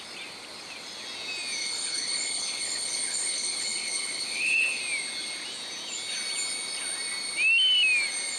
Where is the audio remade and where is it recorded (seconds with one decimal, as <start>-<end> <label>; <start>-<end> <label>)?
0.0-1.6 recorded; 1.6-4.8 remade; 4.8-8.4 recorded

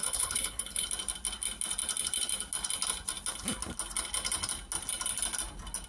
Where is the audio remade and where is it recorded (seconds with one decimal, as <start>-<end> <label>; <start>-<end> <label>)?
0.0-0.9 remade; 0.9-5.9 recorded